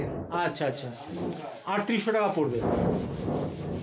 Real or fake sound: real